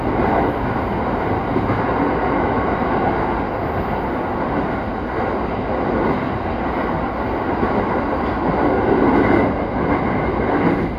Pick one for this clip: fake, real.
real